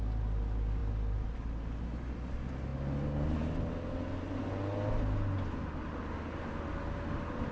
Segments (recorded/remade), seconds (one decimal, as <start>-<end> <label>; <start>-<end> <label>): 0.0-7.5 recorded